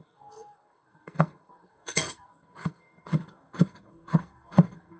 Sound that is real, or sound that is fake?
fake